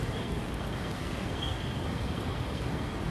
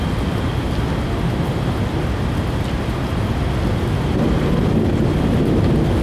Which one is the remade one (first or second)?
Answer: first